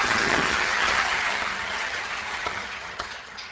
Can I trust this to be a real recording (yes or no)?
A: no